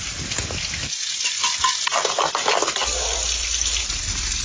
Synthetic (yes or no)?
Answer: no